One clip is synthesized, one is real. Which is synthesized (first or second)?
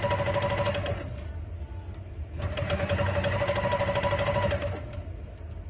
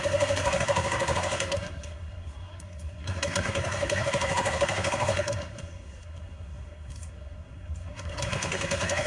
second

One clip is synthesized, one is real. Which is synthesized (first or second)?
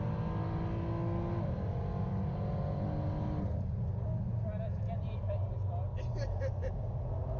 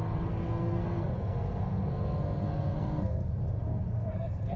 second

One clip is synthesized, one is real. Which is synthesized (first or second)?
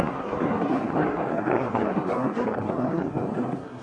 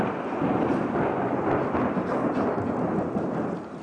first